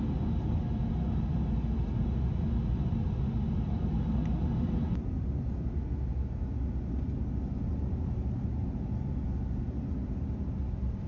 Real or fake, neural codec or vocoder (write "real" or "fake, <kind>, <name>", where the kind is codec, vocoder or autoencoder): real